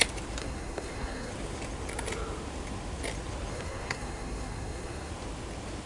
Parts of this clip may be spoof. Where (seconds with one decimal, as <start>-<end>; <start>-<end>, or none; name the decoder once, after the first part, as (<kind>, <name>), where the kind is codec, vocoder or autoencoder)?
0.4-1.3 (codec, SNAC); 3.5-5.1